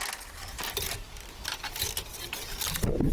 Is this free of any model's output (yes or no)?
yes